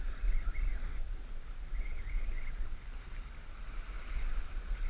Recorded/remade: recorded